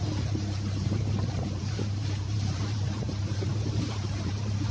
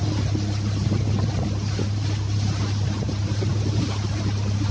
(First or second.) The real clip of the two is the second